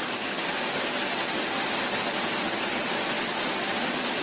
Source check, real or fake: real